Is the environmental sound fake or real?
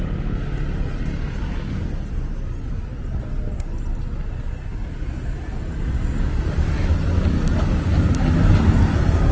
real